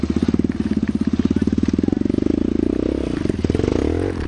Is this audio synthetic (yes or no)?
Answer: no